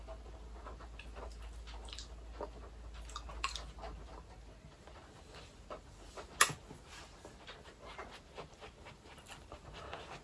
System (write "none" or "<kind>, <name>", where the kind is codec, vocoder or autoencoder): none